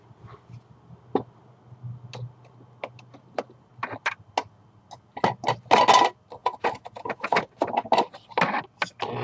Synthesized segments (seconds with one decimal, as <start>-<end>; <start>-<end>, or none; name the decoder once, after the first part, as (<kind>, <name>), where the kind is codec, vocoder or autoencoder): 6.4-7.4 (vocoder, Vocos)